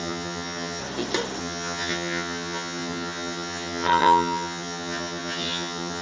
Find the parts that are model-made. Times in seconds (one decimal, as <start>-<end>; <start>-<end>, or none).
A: 0.0-0.8; 1.4-6.0